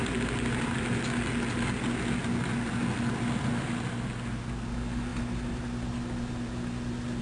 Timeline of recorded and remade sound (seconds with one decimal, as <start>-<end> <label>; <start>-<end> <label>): 0.0-7.2 recorded